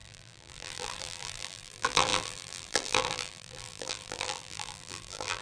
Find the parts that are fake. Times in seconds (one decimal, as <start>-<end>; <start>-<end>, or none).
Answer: 0.0-5.4